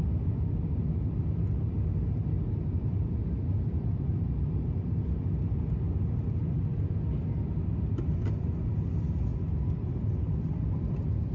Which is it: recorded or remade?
recorded